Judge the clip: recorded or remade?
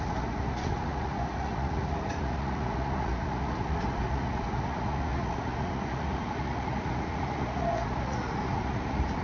remade